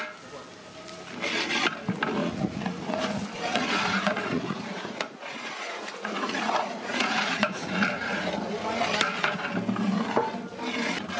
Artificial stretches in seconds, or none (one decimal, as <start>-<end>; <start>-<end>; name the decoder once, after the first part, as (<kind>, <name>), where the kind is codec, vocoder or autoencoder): 2.2-3.0 (vocoder, Vocos); 3.5-8.3